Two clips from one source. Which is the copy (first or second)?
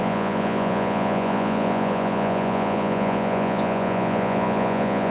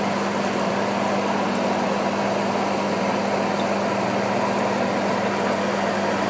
first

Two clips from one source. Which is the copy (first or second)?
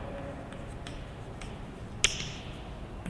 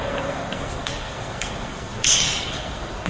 second